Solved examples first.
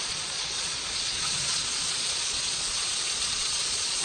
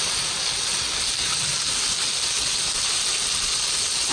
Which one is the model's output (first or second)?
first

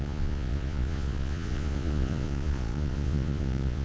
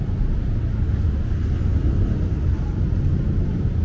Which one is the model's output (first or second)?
first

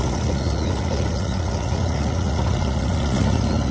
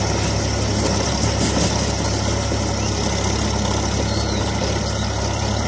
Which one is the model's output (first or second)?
first